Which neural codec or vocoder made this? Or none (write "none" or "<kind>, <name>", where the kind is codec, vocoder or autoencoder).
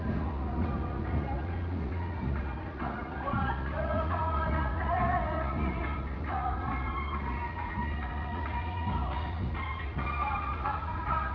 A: vocoder, Vocos